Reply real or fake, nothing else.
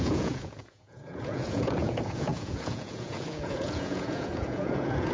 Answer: fake